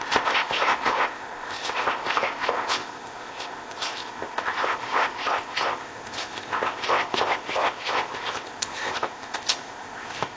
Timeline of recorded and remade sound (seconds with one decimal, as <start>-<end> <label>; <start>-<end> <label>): 0.0-10.4 remade